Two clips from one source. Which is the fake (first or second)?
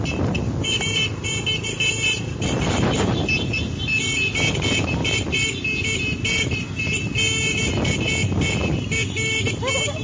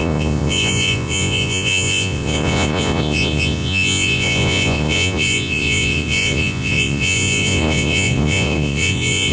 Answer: second